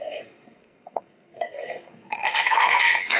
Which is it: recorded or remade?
remade